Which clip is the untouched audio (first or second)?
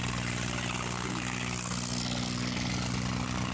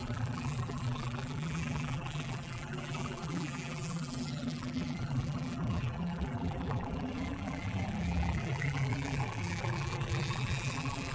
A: first